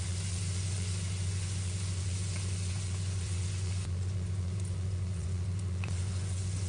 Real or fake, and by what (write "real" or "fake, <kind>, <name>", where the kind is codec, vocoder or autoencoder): fake, vocoder, Vocos